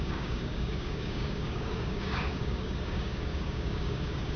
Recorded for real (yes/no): no